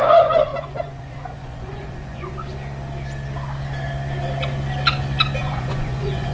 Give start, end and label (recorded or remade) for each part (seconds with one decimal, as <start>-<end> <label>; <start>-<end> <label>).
0.0-2.3 remade; 2.3-5.4 recorded; 5.4-6.3 remade